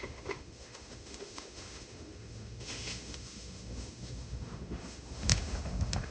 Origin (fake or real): fake